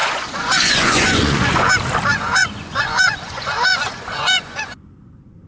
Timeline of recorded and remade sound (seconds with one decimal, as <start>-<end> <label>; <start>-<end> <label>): 0.0-1.7 remade; 1.7-2.1 recorded; 2.1-4.9 remade; 4.9-5.5 recorded